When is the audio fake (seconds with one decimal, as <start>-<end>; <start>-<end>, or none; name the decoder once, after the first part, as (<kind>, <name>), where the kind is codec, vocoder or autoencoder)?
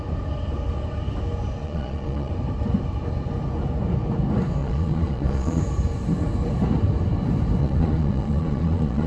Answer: 1.6-2.3 (vocoder, Vocos); 4.6-5.6; 7.6-9.1